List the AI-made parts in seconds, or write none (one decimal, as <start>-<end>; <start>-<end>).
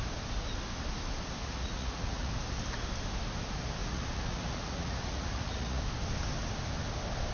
1.4-2.3; 3.8-5.8